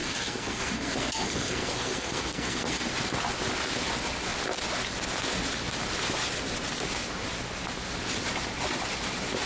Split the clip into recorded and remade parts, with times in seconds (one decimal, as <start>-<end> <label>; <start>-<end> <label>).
0.0-2.9 remade; 2.9-9.5 recorded